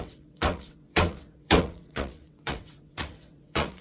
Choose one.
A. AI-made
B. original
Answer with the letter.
A